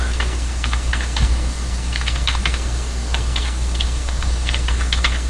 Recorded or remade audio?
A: remade